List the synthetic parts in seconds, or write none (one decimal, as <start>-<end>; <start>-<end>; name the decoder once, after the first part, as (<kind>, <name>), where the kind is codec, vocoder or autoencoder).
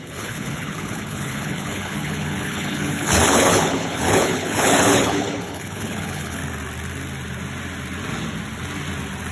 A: 0.0-6.4 (codec, HILCodec)